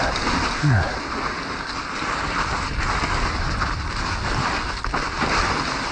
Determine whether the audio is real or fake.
real